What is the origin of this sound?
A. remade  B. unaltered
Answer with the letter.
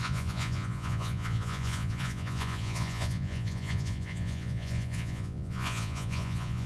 A